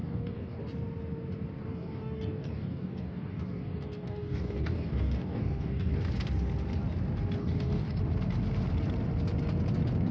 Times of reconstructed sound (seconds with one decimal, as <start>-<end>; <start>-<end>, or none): 0.0-0.6; 1.6-5.9; 7.4-8.0